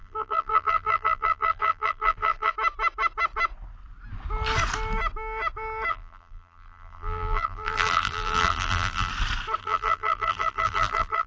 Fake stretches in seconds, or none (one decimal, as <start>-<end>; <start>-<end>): 0.0-2.5; 5.9-9.1; 9.6-11.3

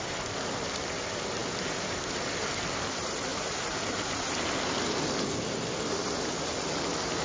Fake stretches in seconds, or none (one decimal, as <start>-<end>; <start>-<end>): none